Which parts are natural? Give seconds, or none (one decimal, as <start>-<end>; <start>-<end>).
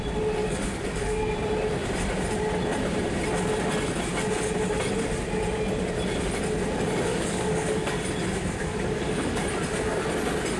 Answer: 0.0-0.4; 1.3-7.1; 8.0-8.6; 9.4-10.6